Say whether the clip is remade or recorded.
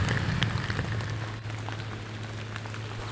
recorded